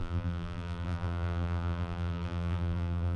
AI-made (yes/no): yes